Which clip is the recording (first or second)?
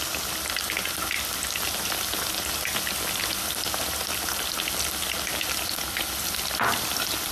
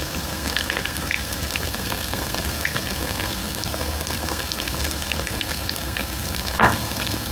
first